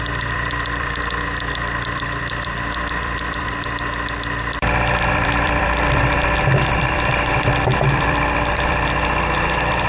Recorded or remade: remade